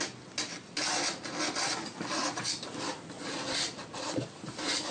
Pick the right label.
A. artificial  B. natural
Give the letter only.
B